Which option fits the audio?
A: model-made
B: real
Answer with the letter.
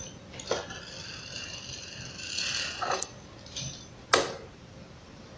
B